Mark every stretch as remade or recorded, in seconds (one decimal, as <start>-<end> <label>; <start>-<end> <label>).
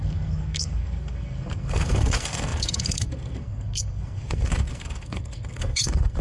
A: 0.0-6.2 remade